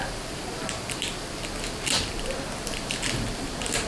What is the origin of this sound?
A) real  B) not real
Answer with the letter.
A